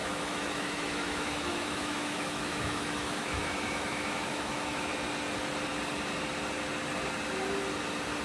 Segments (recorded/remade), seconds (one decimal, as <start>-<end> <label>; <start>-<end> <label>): 0.0-4.9 remade; 4.9-8.2 recorded